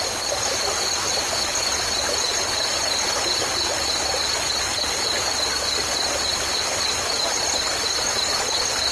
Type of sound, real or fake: real